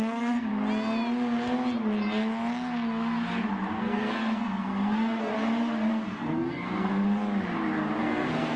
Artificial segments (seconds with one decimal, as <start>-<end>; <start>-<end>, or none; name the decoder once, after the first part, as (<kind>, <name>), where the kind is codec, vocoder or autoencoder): 0.0-0.5 (codec, SNAC); 3.7-5.3; 5.9-7.2; 8.0-8.6